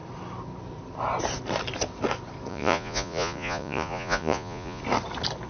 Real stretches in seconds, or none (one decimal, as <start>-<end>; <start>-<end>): 0.0-2.5; 4.8-5.5